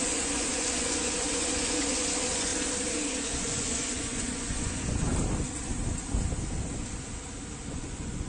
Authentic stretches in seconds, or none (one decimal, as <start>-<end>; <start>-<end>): 2.5-3.2; 5.1-7.7